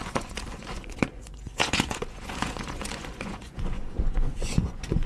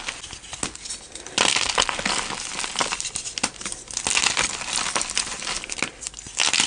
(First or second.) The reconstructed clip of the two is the first